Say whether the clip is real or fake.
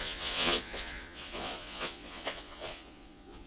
fake